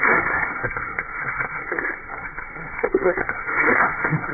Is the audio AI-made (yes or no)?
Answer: yes